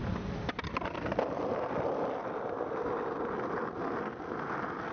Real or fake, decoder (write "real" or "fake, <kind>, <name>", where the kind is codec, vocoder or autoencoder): real